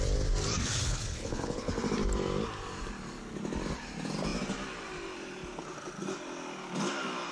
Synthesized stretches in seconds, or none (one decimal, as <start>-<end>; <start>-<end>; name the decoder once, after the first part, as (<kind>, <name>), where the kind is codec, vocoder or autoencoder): 0.8-1.7 (codec, HILCodec)